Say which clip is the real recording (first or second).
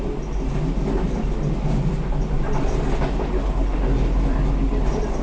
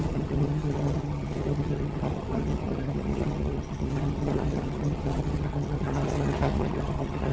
first